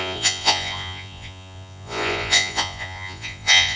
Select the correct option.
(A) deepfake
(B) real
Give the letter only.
A